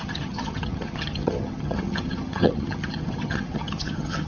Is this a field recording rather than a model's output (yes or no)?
no